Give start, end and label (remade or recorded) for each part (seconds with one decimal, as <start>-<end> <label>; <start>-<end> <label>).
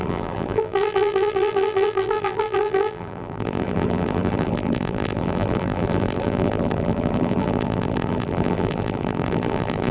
0.0-9.9 remade